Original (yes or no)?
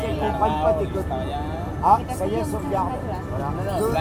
yes